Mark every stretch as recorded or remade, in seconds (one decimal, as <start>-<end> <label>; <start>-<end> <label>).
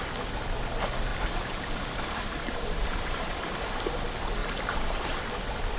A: 0.0-1.1 recorded; 1.1-3.6 remade; 3.6-4.4 recorded; 4.4-5.3 remade; 5.3-5.8 recorded